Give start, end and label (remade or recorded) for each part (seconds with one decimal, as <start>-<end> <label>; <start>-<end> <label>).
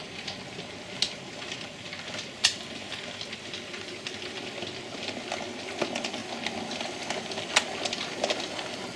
0.0-9.0 recorded